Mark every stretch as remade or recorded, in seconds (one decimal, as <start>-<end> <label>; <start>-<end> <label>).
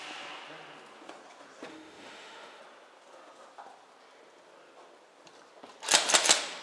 0.0-1.7 recorded; 1.7-2.6 remade; 2.6-6.6 recorded